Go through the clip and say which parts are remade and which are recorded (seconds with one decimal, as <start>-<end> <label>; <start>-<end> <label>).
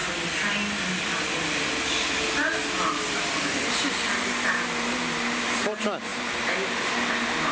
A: 0.0-2.9 recorded; 2.9-7.5 remade